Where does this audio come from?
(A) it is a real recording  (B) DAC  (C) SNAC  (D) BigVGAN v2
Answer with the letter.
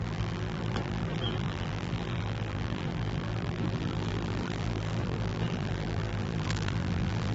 D